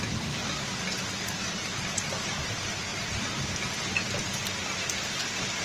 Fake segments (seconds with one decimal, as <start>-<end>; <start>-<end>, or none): 0.0-0.4; 1.2-2.9; 5.1-5.6